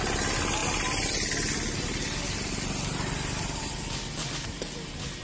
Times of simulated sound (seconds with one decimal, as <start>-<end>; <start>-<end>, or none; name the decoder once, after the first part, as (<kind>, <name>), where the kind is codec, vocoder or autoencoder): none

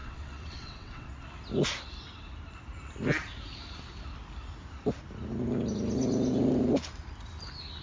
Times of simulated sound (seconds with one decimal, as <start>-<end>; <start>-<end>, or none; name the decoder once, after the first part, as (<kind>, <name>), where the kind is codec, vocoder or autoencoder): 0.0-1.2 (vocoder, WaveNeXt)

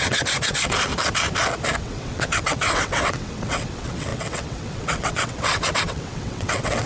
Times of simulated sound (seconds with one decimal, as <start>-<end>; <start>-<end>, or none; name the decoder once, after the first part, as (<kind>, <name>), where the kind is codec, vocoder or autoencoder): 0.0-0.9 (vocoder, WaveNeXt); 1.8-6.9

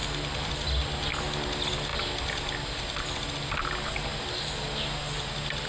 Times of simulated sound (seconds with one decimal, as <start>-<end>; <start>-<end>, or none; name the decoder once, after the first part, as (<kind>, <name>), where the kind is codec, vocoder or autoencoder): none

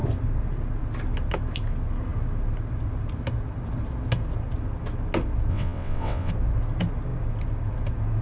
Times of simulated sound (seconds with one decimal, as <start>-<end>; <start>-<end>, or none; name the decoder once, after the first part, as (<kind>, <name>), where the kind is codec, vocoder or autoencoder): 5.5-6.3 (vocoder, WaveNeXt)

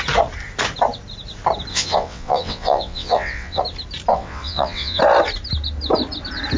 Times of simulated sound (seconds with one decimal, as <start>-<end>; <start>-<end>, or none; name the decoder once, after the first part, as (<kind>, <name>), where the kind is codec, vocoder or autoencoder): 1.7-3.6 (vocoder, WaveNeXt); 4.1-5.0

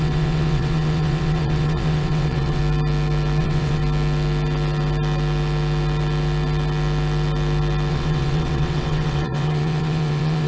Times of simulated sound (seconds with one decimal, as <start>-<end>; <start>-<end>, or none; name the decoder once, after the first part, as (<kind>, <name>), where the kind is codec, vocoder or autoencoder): 0.0-2.6 (vocoder, WaveNeXt); 3.4-3.8; 7.9-10.5

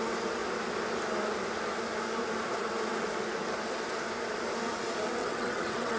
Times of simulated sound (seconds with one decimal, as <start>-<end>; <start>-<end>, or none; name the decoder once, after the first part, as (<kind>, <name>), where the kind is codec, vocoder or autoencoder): 5.2-6.0 (vocoder, WaveNeXt)